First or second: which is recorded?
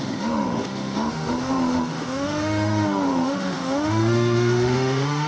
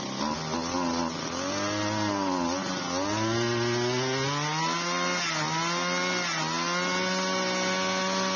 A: second